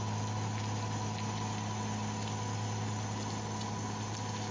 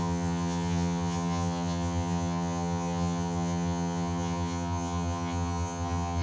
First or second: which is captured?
first